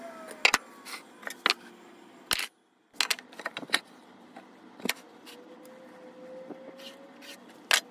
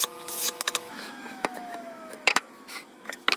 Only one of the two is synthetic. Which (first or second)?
second